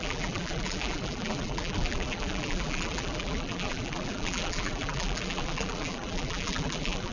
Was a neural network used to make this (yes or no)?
yes